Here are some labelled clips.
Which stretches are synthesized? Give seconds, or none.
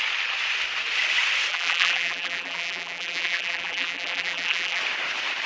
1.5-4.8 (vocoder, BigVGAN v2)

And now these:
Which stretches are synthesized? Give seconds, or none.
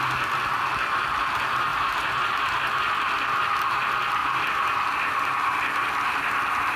1.7-2.2 (vocoder, BigVGAN v2); 4.2-4.9